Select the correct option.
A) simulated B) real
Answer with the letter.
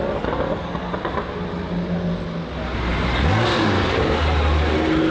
B